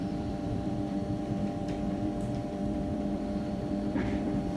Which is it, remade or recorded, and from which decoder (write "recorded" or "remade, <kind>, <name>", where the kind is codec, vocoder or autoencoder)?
remade, vocoder, BigVGAN v2